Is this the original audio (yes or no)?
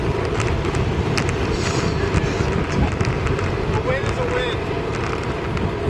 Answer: yes